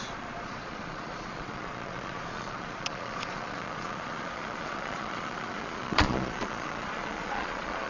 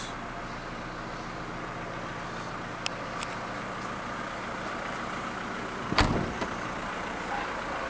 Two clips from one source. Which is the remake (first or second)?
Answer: first